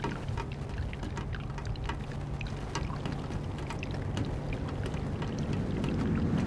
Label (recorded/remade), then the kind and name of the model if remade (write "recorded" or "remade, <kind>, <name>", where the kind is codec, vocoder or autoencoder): recorded